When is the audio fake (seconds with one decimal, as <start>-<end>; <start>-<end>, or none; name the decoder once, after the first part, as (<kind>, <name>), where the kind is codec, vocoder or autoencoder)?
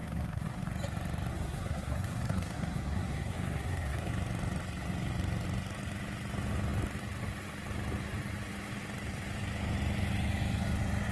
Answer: 0.0-0.7 (codec, SNAC); 1.3-4.1